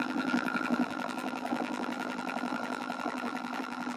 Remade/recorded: remade